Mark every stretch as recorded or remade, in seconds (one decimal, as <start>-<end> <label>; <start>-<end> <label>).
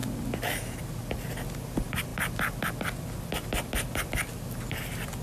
0.0-5.2 recorded